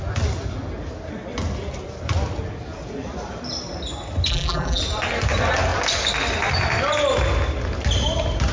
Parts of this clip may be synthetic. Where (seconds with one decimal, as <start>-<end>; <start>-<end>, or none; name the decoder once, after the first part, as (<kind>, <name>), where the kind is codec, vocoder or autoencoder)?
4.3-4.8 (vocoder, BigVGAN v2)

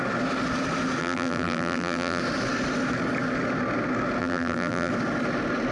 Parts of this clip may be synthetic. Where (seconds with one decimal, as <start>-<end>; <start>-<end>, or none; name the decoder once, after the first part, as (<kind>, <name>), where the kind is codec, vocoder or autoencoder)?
1.0-2.2 (vocoder, BigVGAN v2); 4.2-4.9

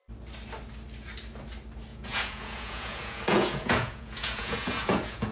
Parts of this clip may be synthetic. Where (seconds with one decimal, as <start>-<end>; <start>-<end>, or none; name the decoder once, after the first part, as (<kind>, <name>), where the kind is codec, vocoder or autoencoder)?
1.9-5.3 (vocoder, Vocos)

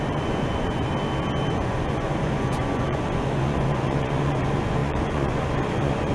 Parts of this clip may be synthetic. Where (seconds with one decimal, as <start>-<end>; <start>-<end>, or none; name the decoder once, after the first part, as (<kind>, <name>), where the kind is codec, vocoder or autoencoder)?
0.0-0.9 (vocoder, Vocos); 1.5-6.1

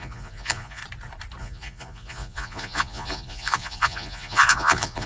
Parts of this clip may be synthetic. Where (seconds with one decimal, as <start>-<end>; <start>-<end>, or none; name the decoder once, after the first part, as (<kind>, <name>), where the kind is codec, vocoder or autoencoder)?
0.0-0.8 (vocoder, Vocos); 1.4-5.1

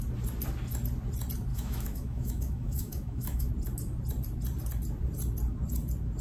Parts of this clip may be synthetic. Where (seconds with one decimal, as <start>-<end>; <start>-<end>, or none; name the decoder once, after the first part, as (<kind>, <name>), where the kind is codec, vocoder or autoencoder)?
1.5-3.5 (autoencoder, DAC-VAE)

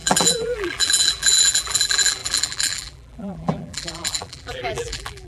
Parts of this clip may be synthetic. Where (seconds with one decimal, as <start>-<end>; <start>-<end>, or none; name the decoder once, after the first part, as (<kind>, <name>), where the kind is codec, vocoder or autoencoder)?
0.0-5.3 (vocoder, BigVGAN v2)